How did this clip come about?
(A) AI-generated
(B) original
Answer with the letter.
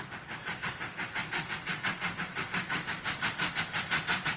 B